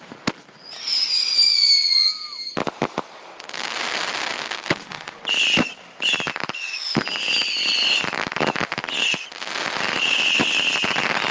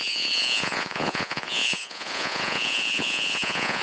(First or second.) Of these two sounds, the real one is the first